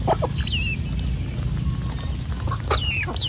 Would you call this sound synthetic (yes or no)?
no